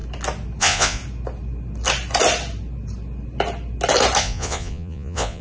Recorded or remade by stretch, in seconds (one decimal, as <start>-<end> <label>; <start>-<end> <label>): 0.0-0.6 recorded; 0.6-1.0 remade; 1.0-4.2 recorded; 4.2-5.4 remade